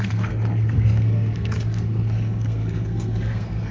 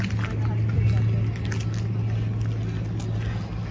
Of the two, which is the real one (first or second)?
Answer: second